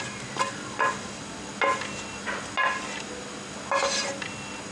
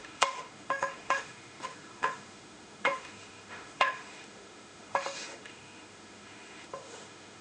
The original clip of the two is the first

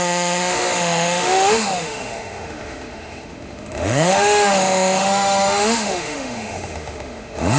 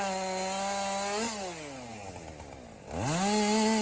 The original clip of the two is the second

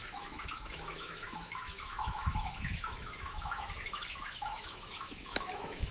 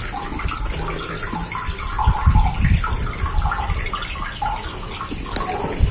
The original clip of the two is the second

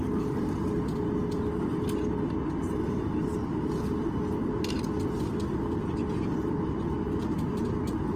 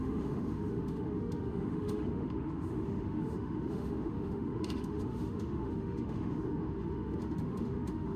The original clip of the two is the first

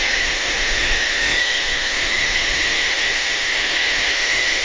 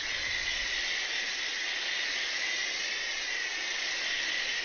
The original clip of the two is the second